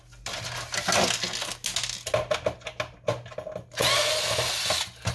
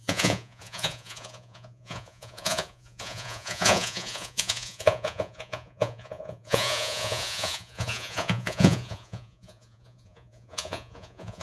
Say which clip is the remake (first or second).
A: second